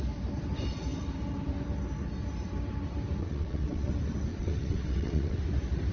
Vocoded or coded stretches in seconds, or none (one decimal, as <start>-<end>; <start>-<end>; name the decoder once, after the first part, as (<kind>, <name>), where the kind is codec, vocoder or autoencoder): 3.2-3.9 (vocoder, WaveNeXt); 4.3-5.4

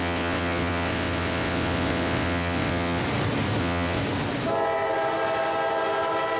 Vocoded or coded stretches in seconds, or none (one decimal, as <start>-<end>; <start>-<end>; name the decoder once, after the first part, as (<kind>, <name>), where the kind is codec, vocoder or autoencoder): 0.0-3.0 (vocoder, WaveNeXt); 3.6-4.0

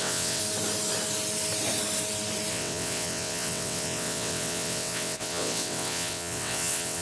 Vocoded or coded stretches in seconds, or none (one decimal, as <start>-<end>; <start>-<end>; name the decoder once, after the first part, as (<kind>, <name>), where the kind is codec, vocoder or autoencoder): 0.0-0.4 (vocoder, WaveNeXt); 2.5-7.0

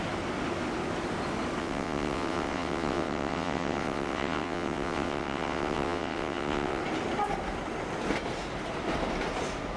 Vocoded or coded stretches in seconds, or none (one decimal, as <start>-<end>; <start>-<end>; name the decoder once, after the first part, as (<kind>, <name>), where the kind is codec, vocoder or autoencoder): 1.6-6.8 (vocoder, WaveNeXt)